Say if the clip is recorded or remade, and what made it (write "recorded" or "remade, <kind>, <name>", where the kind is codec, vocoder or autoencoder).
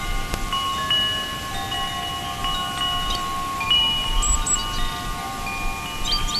recorded